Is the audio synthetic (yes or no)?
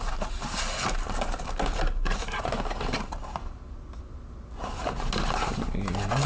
no